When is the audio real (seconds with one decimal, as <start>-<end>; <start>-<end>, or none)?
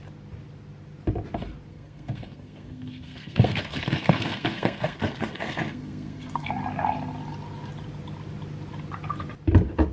0.0-1.7; 6.5-9.9